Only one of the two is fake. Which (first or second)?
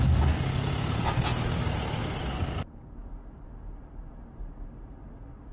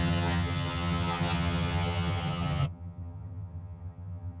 second